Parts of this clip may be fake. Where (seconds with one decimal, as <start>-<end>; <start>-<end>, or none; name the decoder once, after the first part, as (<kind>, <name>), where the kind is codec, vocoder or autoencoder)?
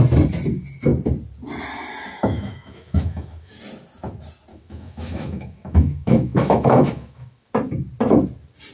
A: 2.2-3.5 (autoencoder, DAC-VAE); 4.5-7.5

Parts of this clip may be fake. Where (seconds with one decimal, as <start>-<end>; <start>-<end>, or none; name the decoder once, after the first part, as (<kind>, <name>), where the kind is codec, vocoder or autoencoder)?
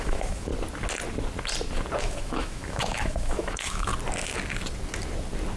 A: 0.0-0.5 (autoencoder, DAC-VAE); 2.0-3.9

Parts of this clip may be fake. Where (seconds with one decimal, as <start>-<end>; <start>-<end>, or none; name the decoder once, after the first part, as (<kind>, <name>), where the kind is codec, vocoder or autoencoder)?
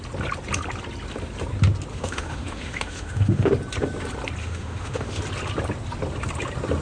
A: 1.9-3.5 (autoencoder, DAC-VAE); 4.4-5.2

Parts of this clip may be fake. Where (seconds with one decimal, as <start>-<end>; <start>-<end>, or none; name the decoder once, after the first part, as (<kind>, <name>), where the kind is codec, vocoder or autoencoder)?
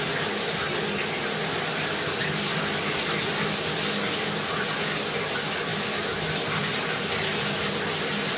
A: none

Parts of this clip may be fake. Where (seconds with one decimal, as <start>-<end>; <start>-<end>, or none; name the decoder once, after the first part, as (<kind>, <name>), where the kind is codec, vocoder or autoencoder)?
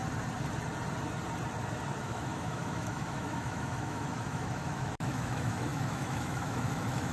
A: 2.0-7.1 (autoencoder, DAC-VAE)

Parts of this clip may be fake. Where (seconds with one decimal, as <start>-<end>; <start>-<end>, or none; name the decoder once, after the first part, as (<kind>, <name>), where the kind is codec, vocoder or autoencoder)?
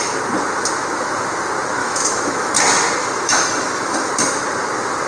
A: 1.8-2.5 (autoencoder, DAC-VAE); 3.0-4.1